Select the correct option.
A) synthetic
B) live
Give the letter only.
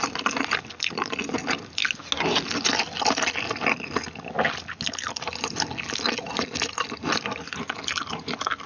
B